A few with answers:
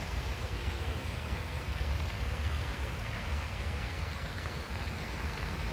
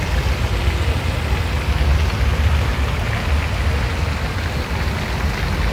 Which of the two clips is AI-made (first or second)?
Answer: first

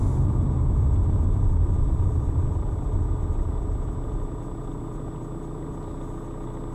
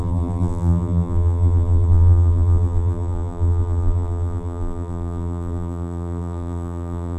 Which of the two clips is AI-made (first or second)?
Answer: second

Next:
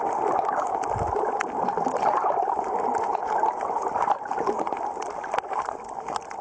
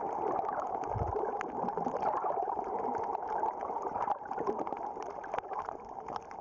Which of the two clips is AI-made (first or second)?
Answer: second